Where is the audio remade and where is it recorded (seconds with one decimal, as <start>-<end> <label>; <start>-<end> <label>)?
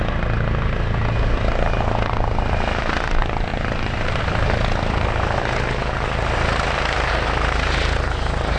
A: 0.0-3.5 recorded; 3.5-4.2 remade; 4.2-8.6 recorded